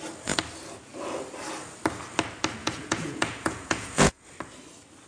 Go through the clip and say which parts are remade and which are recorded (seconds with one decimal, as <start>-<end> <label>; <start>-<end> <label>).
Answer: 0.0-2.6 recorded; 2.6-4.3 remade; 4.3-5.1 recorded